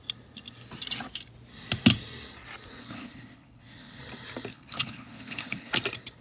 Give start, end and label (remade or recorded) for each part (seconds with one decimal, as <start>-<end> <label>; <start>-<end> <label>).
0.0-2.8 recorded; 2.8-4.0 remade; 4.0-4.5 recorded; 4.5-5.7 remade; 5.7-6.2 recorded